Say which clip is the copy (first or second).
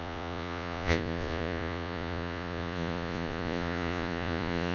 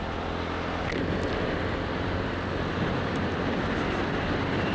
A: first